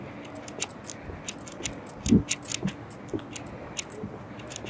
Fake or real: real